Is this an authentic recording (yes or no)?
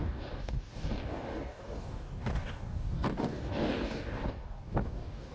no